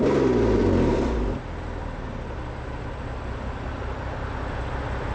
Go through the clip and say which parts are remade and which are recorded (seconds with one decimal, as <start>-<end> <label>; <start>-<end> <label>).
0.0-5.1 recorded